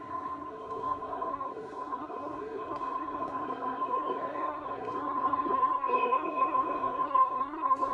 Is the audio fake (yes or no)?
yes